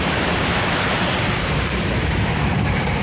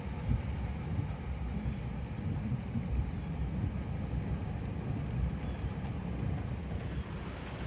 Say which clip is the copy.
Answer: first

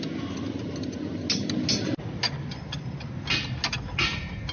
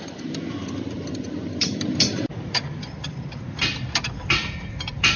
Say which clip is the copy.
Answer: second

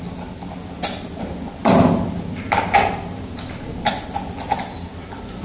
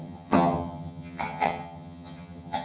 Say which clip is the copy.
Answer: second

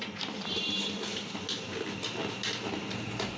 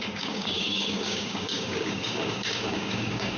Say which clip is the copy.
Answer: second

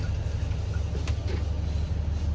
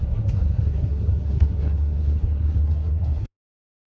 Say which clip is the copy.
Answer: second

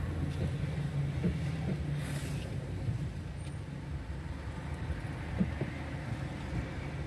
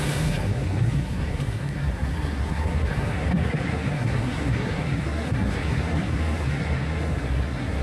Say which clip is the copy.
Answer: second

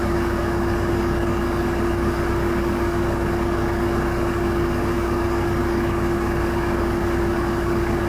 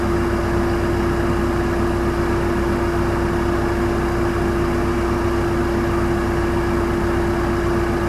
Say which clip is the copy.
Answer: first